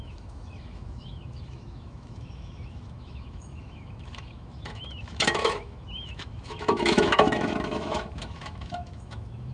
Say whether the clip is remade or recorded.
remade